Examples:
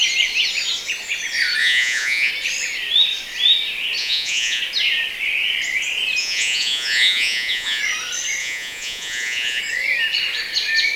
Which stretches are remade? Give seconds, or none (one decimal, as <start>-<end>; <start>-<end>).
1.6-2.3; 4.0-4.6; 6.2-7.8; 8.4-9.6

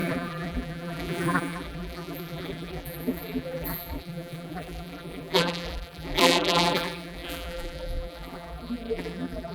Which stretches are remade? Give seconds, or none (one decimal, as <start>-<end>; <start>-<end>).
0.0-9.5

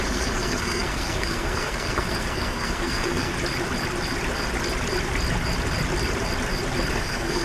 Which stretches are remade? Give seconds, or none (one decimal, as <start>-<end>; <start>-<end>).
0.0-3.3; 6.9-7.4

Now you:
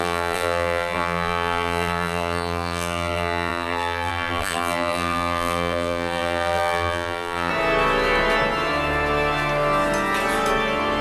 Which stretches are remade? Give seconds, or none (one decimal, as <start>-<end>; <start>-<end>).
0.0-7.5

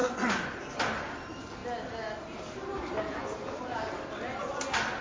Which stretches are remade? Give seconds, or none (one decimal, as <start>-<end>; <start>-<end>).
none